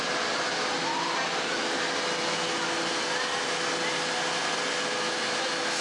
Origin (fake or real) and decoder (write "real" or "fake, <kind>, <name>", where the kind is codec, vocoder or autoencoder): real